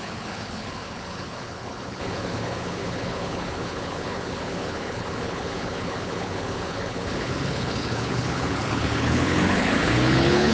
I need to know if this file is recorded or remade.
remade